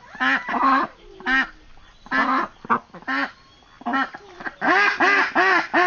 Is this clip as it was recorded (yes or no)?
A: yes